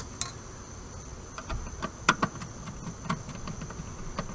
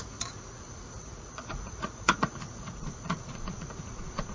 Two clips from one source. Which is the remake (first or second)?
second